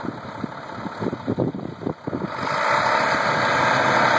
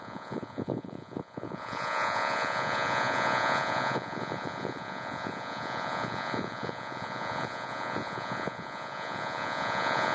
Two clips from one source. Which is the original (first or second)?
first